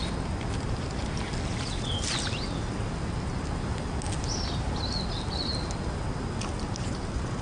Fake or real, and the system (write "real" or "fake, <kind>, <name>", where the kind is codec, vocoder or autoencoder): real